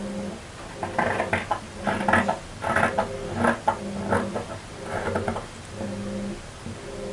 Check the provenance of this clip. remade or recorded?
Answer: recorded